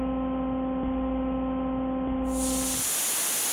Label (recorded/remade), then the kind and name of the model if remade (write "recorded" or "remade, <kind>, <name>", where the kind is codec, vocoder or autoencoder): recorded